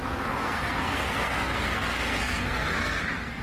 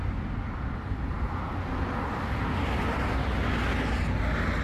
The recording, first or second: second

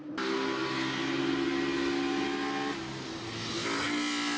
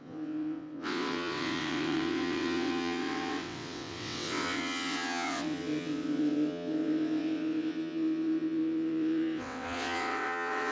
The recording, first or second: first